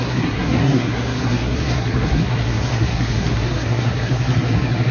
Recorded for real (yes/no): no